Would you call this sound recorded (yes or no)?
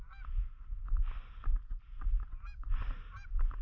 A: yes